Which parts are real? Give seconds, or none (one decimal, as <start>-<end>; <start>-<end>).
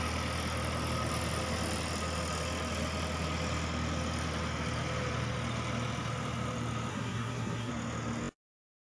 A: 0.0-6.9; 7.7-8.9